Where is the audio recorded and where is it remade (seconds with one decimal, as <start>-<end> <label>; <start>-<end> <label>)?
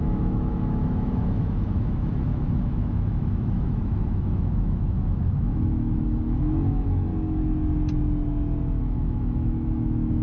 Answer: 0.0-7.1 remade; 7.1-8.8 recorded; 8.8-10.2 remade